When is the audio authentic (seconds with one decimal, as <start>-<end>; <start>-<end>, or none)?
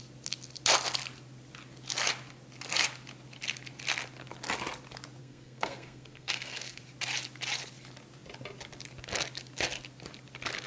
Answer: 0.0-5.2; 6.8-10.7